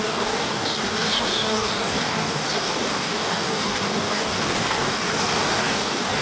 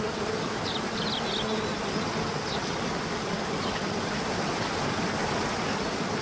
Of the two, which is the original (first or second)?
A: second